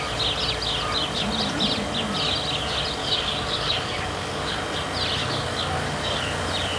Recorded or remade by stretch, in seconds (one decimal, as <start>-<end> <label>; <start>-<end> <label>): 0.0-3.0 recorded; 3.0-4.6 remade; 4.6-5.2 recorded; 5.2-6.2 remade; 6.2-6.8 recorded